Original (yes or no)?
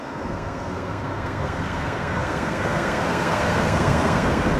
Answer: no